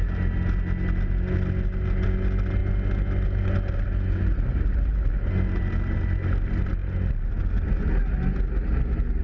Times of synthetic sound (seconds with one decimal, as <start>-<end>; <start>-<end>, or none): none